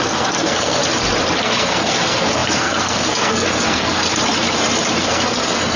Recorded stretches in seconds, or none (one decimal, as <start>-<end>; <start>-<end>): 0.8-1.4; 4.1-5.0